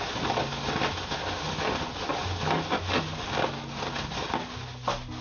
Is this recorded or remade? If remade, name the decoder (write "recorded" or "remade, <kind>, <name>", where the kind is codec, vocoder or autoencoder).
recorded